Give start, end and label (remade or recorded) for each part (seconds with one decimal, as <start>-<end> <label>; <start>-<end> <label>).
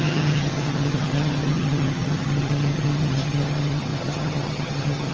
0.0-5.1 remade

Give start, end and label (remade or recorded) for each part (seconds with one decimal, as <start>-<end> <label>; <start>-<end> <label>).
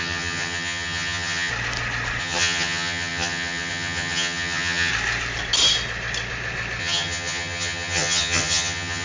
0.0-1.5 remade; 1.5-2.2 recorded; 2.2-4.9 remade; 4.9-6.8 recorded; 6.8-9.0 remade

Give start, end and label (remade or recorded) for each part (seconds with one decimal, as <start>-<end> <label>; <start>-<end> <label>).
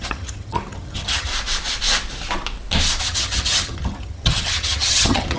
0.0-1.3 remade; 1.3-3.0 recorded; 3.0-5.4 remade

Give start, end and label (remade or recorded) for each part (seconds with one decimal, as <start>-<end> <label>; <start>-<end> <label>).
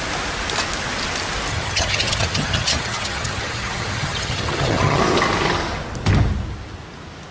0.0-1.5 recorded; 1.5-5.0 remade; 5.0-7.3 recorded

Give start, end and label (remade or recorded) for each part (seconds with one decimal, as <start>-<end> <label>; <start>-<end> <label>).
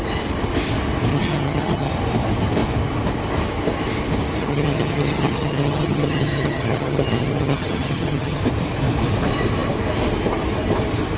0.0-1.1 recorded; 1.1-1.9 remade; 1.9-4.4 recorded; 4.4-8.4 remade; 8.4-11.2 recorded